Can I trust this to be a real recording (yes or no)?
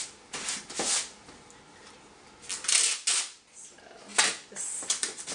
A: yes